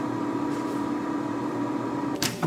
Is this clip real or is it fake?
fake